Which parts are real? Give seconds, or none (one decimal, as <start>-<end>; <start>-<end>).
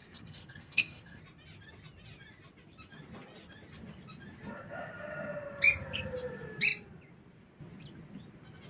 1.2-8.7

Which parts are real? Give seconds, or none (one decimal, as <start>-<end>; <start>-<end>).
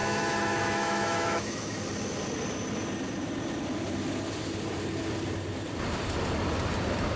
1.8-7.2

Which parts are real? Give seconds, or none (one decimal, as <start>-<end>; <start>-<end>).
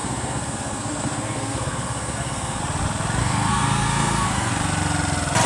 2.6-3.2; 4.5-5.5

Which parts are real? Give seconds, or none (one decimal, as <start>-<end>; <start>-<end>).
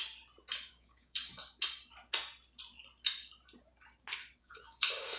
0.0-0.7; 1.3-4.4